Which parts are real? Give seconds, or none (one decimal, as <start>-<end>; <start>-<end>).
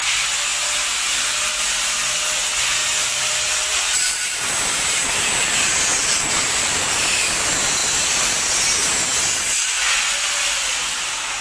0.0-2.8; 7.3-7.8; 8.4-11.4